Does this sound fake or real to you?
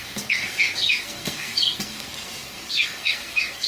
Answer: fake